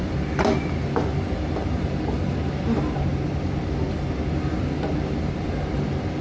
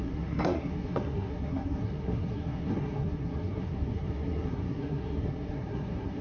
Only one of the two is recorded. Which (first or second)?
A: first